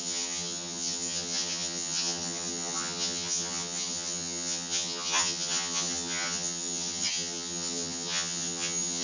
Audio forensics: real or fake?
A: fake